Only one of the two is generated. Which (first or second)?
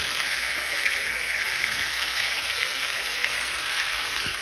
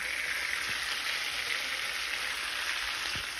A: first